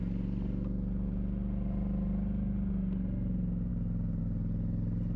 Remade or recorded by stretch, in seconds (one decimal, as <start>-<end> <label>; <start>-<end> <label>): 0.0-5.2 recorded